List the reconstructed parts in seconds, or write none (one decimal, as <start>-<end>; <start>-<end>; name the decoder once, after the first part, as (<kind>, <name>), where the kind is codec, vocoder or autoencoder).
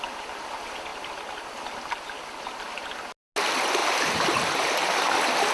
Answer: 3.8-5.5 (vocoder, BigVGAN v2)